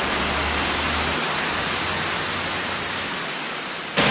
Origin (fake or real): real